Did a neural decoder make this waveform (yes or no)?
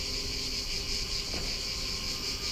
no